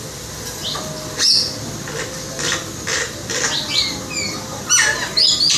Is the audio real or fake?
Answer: real